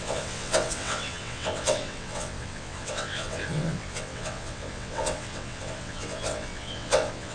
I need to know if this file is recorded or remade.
remade